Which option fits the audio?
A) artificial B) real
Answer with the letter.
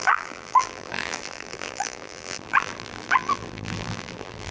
A